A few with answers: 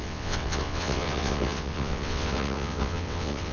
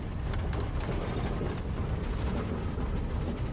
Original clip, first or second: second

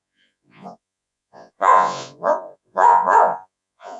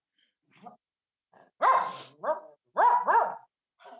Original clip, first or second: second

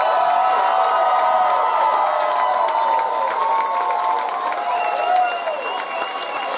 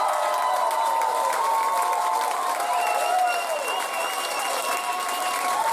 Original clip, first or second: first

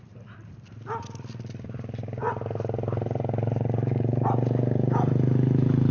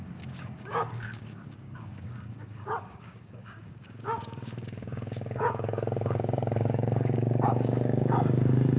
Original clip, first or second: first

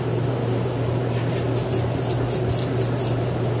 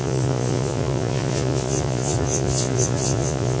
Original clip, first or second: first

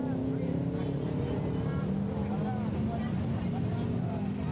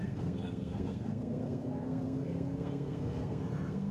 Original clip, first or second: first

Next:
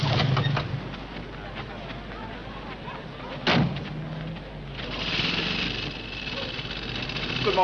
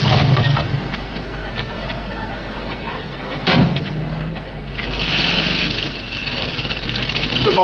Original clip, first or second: first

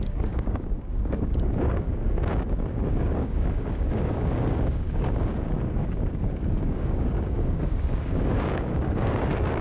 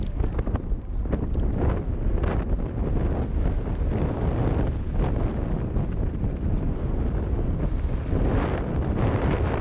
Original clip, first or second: second